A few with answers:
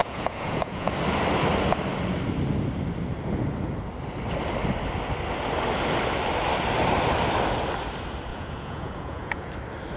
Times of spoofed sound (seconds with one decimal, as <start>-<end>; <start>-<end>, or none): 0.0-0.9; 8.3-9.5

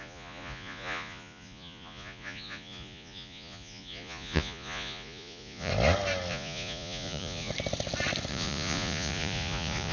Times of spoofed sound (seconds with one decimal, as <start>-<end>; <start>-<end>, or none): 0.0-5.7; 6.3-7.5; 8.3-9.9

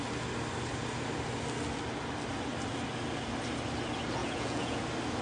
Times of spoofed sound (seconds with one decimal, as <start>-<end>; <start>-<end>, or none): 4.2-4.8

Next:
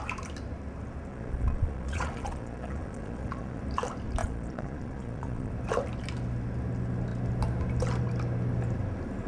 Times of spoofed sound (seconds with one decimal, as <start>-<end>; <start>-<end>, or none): 1.1-3.6; 4.2-5.5

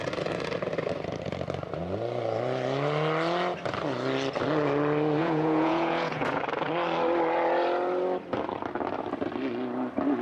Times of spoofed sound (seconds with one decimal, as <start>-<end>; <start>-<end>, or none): 5.2-6.4